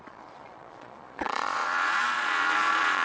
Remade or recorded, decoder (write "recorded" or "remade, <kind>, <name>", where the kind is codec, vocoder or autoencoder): remade, vocoder, Vocos